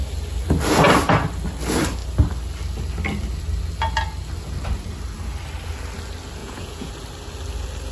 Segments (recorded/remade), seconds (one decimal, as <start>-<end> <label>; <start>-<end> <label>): 0.0-6.4 recorded; 6.4-6.9 remade; 6.9-7.9 recorded